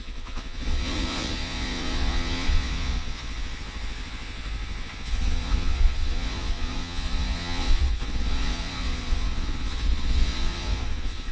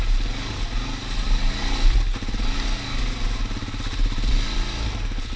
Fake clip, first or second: first